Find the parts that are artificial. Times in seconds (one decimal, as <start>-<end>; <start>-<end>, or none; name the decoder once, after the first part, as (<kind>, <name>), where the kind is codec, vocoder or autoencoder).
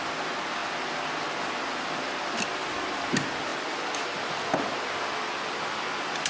none